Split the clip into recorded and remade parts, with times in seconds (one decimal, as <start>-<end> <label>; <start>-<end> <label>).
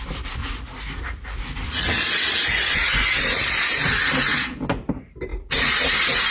0.0-0.4 recorded; 0.4-3.4 remade; 3.4-6.3 recorded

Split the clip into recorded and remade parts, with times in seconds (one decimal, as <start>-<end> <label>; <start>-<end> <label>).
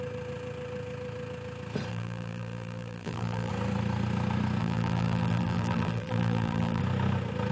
0.0-1.9 recorded; 1.9-3.5 remade; 3.5-4.6 recorded; 4.6-6.8 remade; 6.8-7.5 recorded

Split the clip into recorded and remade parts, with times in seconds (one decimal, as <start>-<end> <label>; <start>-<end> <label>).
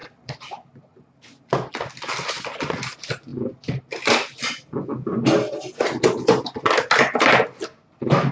0.0-8.3 recorded